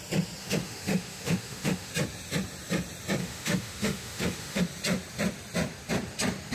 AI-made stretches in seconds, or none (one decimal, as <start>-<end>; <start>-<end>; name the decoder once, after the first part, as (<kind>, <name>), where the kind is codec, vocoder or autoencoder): 0.4-1.9 (autoencoder, DAC-VAE); 3.2-4.6

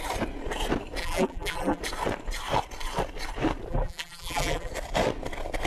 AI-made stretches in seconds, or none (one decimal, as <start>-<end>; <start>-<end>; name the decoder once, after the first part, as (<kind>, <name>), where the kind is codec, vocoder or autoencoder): 1.0-1.8 (vocoder, BigVGAN v2); 3.7-4.7

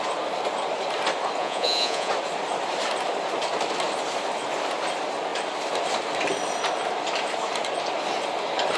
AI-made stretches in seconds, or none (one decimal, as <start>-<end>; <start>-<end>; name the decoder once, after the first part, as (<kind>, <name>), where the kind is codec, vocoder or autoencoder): 1.4-2.1 (vocoder, Vocos)

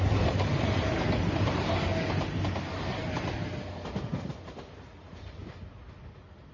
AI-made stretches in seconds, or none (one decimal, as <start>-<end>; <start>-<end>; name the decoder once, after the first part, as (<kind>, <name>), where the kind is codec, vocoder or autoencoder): 0.0-1.9 (vocoder, BigVGAN v2); 4.7-5.4

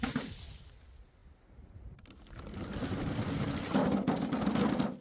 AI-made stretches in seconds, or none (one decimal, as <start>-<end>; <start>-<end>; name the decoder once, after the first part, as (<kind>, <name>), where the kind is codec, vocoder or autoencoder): 0.0-5.0 (vocoder, BigVGAN v2)

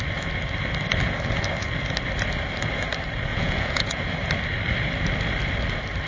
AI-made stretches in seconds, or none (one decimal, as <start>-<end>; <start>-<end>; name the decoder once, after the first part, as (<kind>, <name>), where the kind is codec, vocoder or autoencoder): 3.3-4.0 (vocoder, Vocos)

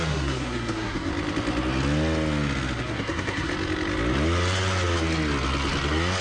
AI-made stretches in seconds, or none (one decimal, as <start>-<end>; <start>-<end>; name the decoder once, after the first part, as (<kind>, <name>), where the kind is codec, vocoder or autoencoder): 0.0-1.1 (codec, SNAC); 2.8-3.5

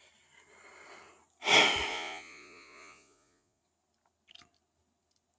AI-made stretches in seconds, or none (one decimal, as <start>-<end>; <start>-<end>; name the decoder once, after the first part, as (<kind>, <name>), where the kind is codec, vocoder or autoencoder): 1.9-3.6 (vocoder, Vocos)